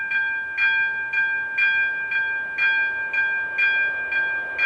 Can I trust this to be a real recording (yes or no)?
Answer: yes